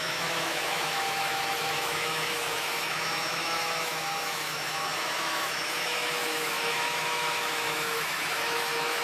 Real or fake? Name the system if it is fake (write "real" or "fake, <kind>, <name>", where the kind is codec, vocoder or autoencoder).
fake, autoencoder, DAC-VAE